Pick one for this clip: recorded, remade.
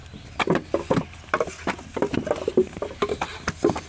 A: recorded